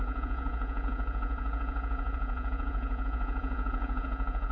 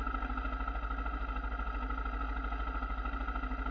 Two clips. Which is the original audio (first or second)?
second